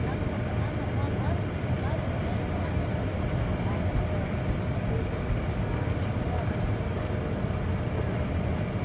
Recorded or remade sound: recorded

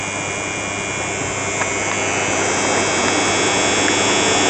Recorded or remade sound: recorded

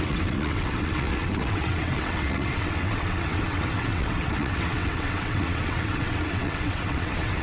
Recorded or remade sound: remade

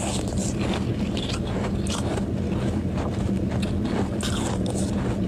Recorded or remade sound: recorded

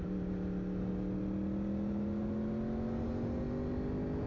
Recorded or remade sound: recorded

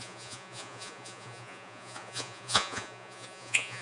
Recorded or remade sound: remade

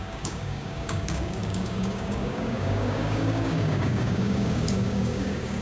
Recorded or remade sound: remade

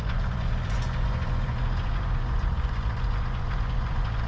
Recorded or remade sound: remade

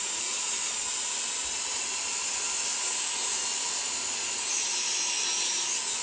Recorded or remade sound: recorded